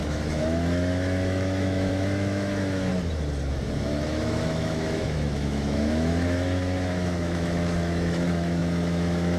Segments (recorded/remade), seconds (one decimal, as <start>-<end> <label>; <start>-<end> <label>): 0.0-2.9 remade; 2.9-3.8 recorded; 3.8-9.4 remade